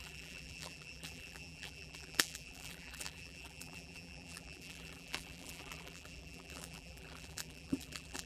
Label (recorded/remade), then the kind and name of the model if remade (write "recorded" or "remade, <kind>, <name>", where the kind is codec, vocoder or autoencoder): remade, vocoder, BigVGAN v2